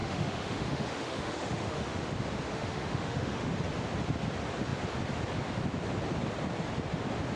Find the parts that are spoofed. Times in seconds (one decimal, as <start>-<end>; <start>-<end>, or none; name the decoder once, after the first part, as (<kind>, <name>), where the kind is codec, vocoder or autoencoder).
0.0-2.0 (autoencoder, DAC-VAE); 2.5-3.5